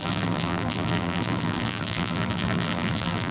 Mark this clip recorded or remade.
remade